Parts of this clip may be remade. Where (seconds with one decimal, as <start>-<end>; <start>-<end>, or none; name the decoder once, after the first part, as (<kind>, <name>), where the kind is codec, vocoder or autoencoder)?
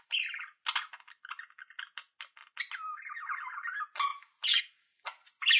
none